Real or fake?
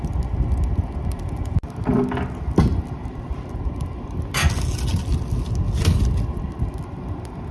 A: real